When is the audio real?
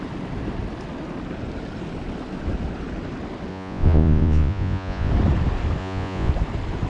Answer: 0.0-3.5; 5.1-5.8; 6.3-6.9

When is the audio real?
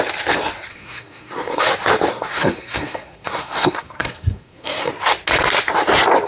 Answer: 0.0-0.7; 1.7-2.1; 4.9-6.3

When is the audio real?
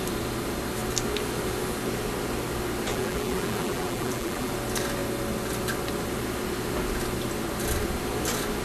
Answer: 0.0-2.9; 4.5-8.6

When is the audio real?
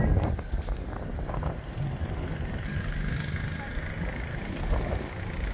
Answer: 0.0-5.5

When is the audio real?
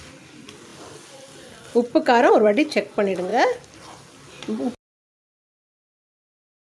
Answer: 0.7-2.3; 3.3-6.6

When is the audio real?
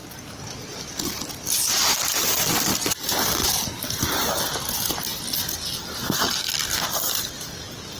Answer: 0.0-8.0